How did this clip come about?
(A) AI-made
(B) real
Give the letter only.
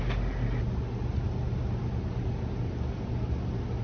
B